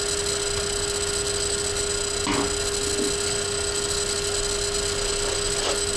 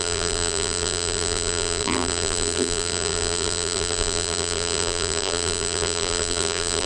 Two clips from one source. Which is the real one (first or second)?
first